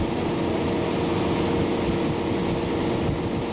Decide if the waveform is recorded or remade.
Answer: recorded